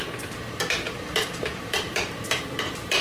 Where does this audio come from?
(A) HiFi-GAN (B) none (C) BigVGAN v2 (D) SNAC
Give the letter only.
C